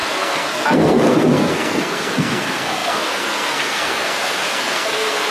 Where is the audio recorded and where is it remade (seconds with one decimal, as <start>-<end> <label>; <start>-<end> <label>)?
0.0-5.3 remade

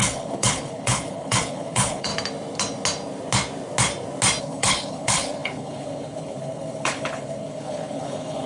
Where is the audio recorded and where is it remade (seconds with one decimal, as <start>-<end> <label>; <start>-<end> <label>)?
0.0-2.1 remade; 2.1-4.4 recorded; 4.4-8.5 remade

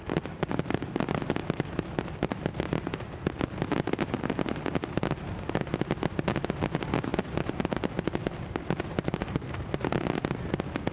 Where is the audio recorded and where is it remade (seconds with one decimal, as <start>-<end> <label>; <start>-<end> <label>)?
0.0-10.9 recorded

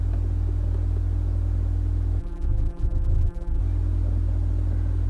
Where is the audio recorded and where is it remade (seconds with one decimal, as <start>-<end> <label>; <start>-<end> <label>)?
0.0-2.2 recorded; 2.2-3.6 remade; 3.6-5.1 recorded

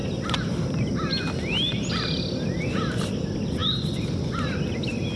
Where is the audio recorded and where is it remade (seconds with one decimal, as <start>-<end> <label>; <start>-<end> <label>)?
0.0-3.6 recorded; 3.6-4.5 remade; 4.5-5.2 recorded

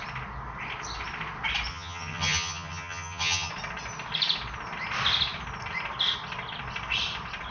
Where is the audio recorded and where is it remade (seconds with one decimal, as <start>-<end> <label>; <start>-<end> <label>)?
0.0-1.7 recorded; 1.7-3.5 remade; 3.5-7.5 recorded

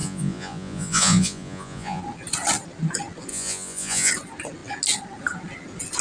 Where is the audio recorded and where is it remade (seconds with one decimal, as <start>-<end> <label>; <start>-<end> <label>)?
0.0-2.0 remade; 2.0-3.3 recorded; 3.3-4.1 remade; 4.1-6.0 recorded

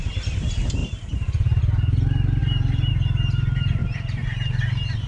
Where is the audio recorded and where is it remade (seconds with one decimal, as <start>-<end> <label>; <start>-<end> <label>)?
0.0-0.8 recorded; 0.8-1.6 remade; 1.6-2.4 recorded; 2.4-2.9 remade; 2.9-3.8 recorded; 3.8-5.1 remade